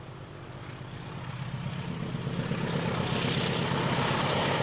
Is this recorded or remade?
recorded